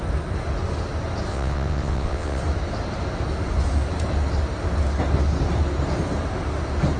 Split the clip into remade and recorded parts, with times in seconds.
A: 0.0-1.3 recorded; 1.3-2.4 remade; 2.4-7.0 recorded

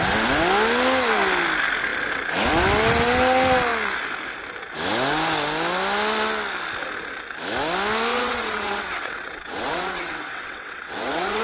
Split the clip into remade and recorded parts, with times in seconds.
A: 0.0-8.1 recorded; 8.1-11.4 remade

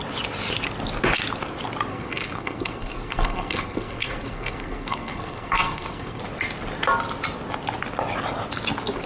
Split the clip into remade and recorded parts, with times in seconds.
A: 0.0-1.9 recorded; 1.9-6.2 remade; 6.2-9.1 recorded